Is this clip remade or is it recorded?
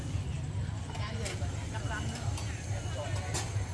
recorded